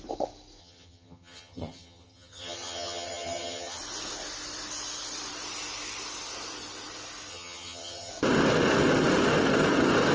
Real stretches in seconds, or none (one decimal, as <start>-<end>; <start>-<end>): 0.0-0.6; 3.8-7.3; 8.1-10.1